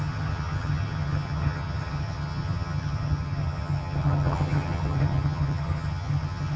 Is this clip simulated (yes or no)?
yes